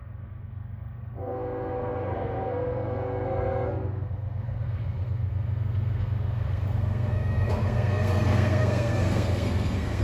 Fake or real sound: fake